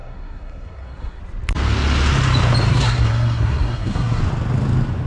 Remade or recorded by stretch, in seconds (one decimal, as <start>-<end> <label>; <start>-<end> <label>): 0.0-1.2 remade; 1.2-2.7 recorded; 2.7-4.2 remade; 4.2-5.1 recorded